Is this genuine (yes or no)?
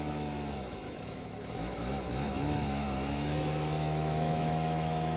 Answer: no